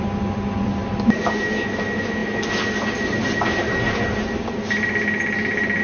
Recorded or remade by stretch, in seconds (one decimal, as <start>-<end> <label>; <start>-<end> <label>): 0.0-5.8 recorded